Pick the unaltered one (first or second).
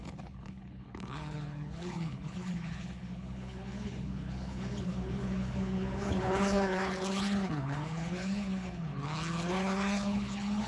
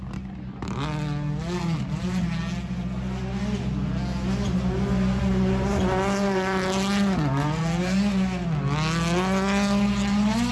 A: second